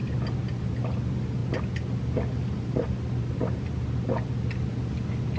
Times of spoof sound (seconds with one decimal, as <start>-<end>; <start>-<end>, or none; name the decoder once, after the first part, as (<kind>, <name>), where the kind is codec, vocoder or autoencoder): none